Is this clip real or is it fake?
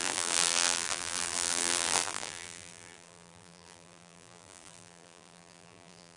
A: fake